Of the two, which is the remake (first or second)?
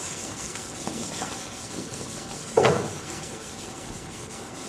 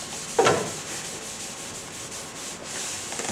first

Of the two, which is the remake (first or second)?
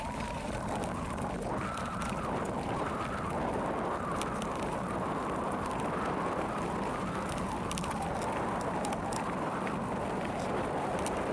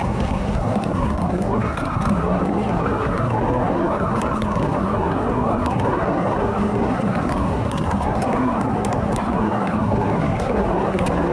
second